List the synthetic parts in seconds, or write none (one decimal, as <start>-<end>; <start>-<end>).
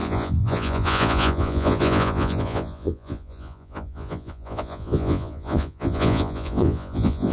0.0-7.3